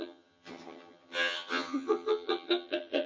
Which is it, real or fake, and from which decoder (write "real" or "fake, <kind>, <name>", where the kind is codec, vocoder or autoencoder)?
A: fake, vocoder, HiFi-GAN